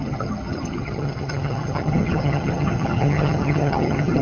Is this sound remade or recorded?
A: remade